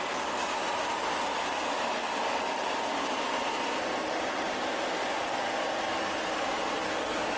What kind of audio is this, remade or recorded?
remade